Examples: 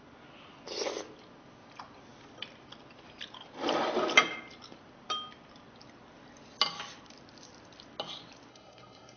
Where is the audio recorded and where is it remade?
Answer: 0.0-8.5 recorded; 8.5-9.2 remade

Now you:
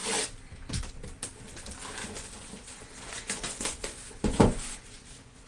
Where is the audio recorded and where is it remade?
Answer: 0.0-2.0 recorded; 2.0-5.5 remade

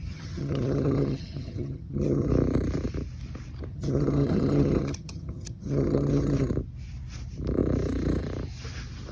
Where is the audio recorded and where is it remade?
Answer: 0.0-2.3 remade; 2.3-3.7 recorded; 3.7-6.5 remade; 6.5-9.1 recorded

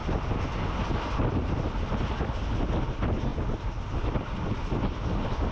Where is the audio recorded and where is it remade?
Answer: 0.0-5.5 recorded

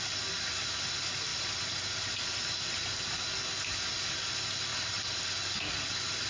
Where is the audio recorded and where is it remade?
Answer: 0.0-4.7 recorded; 4.7-5.3 remade; 5.3-6.3 recorded

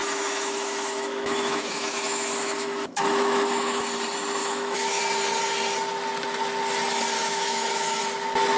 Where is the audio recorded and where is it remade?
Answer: 0.0-3.8 remade; 3.8-4.4 recorded; 4.4-5.0 remade; 5.0-7.2 recorded; 7.2-8.0 remade; 8.0-8.6 recorded